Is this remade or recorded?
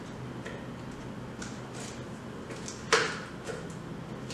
recorded